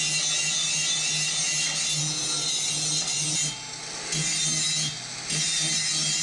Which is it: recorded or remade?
recorded